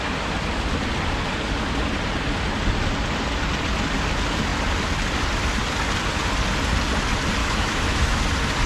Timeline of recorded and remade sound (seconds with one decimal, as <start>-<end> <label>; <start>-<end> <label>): 0.0-7.4 recorded; 7.4-8.2 remade; 8.2-8.7 recorded